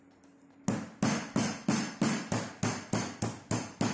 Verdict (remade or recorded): recorded